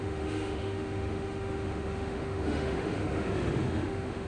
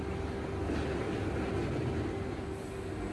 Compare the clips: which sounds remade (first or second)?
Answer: first